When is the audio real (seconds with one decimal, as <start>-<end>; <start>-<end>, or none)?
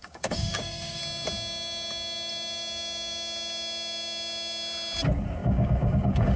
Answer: 1.0-5.4